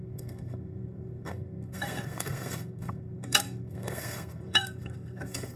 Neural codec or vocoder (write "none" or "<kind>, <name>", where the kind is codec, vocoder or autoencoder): codec, SNAC